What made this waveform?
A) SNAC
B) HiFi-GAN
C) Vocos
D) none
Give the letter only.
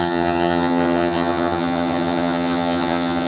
B